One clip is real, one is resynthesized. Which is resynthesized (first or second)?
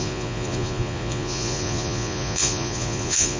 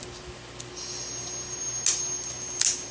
first